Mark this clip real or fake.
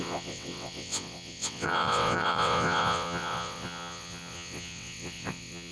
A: fake